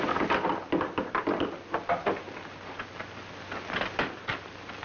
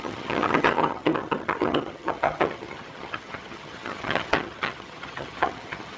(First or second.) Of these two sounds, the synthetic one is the second